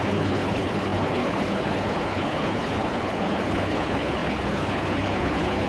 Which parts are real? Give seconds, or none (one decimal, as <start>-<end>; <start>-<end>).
none